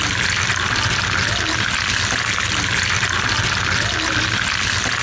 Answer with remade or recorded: recorded